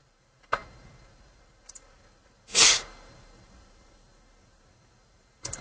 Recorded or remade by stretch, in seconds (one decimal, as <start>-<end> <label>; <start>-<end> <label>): 0.0-5.6 recorded